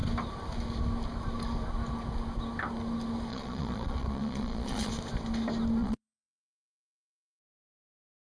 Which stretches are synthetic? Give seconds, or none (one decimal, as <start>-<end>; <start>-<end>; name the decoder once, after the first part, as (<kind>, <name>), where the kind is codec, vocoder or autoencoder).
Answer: 3.3-4.9 (vocoder, Vocos); 5.8-7.4